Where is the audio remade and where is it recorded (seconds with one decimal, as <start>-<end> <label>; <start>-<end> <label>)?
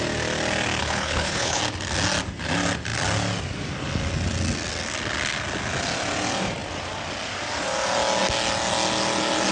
0.0-0.8 recorded; 0.8-1.6 remade; 1.6-9.5 recorded